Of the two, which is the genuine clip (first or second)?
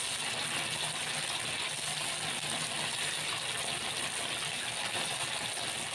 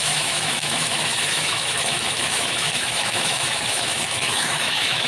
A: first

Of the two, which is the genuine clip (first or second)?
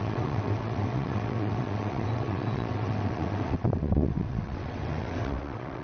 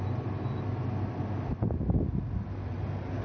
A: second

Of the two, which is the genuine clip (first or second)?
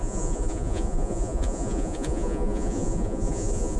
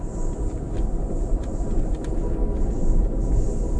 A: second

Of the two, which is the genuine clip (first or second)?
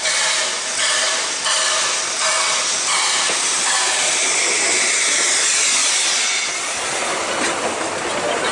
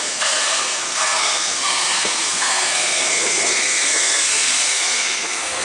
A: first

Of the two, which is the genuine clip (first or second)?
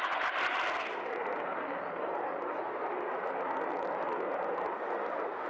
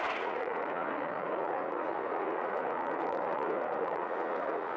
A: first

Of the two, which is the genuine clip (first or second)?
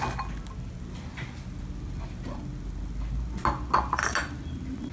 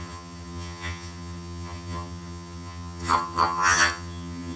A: first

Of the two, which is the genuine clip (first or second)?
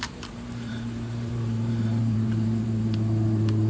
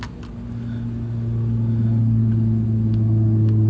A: second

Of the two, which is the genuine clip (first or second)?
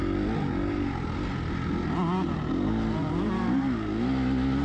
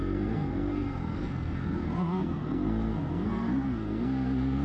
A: first